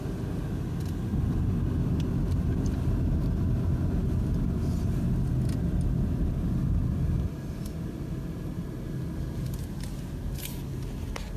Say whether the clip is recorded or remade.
recorded